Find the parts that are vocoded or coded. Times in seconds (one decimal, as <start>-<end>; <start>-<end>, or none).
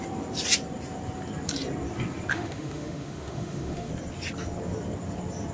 2.3-3.9